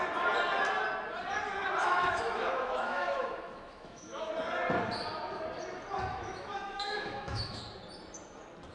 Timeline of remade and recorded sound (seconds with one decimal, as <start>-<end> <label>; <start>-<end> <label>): 0.0-1.8 recorded; 1.8-4.3 remade; 4.3-6.1 recorded; 6.1-7.6 remade; 7.6-8.7 recorded